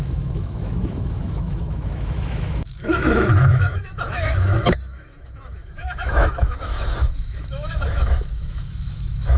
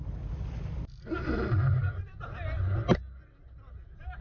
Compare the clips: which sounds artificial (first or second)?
first